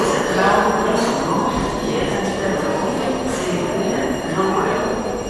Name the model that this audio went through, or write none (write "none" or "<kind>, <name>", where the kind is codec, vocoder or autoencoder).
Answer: none